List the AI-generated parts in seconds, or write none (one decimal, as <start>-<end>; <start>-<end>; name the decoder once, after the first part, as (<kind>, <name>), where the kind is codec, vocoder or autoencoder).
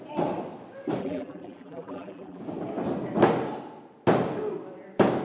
1.0-2.4 (vocoder, BigVGAN v2)